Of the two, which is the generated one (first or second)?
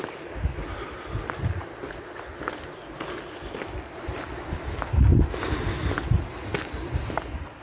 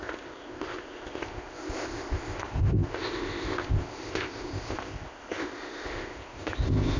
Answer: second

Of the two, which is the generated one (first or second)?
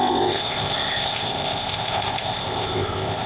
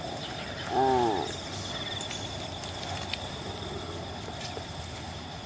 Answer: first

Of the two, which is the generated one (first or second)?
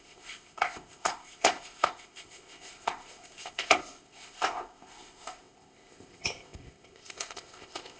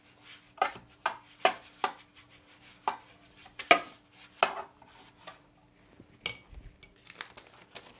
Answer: first